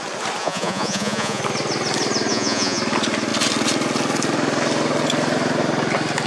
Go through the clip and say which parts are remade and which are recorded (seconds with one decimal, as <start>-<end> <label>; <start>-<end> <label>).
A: 0.0-0.4 recorded; 0.4-1.4 remade; 1.4-2.3 recorded; 2.3-2.8 remade; 2.8-6.3 recorded